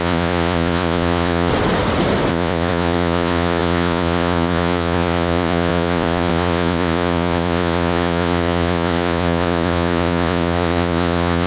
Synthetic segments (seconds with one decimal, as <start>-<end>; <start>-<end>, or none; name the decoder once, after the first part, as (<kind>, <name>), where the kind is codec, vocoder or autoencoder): 0.0-1.5 (vocoder, Vocos); 2.3-11.5